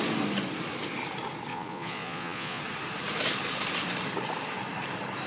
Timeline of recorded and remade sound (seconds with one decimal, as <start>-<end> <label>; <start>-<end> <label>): 0.0-1.5 recorded; 1.5-2.6 remade; 2.6-5.3 recorded